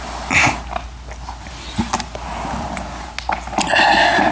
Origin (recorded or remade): recorded